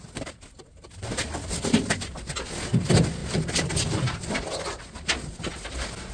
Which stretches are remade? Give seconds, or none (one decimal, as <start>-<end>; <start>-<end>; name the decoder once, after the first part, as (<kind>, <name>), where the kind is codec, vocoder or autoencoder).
none